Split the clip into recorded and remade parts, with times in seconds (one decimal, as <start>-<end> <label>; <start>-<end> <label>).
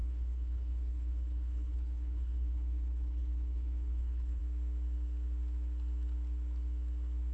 0.0-4.4 remade; 4.4-7.3 recorded